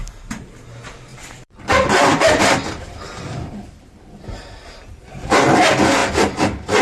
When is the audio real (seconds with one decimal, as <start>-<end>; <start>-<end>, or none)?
0.0-1.1; 4.2-6.8